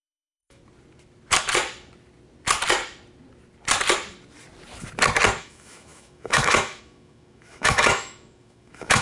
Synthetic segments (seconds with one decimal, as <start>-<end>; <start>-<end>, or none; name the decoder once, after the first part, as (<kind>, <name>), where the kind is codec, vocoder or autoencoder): 0.0-0.6 (autoencoder, DAC-VAE); 5.4-9.0